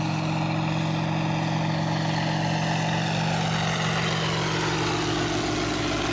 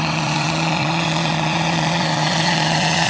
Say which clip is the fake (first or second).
second